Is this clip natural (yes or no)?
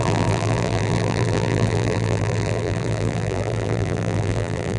no